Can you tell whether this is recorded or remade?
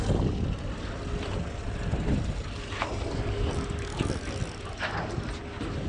recorded